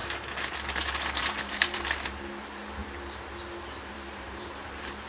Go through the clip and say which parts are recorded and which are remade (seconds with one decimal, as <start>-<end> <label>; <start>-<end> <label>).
0.0-0.6 recorded; 0.6-2.8 remade; 2.8-3.6 recorded; 3.6-5.1 remade